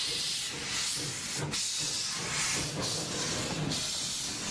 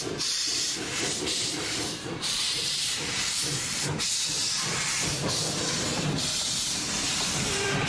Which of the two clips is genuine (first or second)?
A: first